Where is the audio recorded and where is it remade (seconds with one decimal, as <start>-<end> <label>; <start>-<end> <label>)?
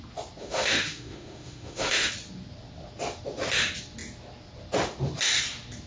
0.0-0.4 recorded; 0.4-2.1 remade; 2.1-5.9 recorded